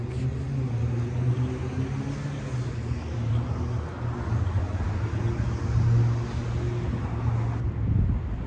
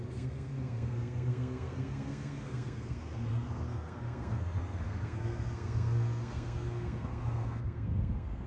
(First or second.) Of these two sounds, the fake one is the second